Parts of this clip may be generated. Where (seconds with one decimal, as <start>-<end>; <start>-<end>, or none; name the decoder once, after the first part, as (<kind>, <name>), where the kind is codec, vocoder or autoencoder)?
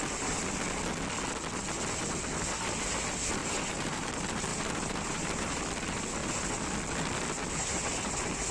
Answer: 3.4-4.1 (vocoder, BigVGAN v2); 4.5-5.6